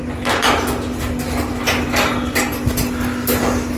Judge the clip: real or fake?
real